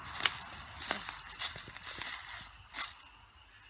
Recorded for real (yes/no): yes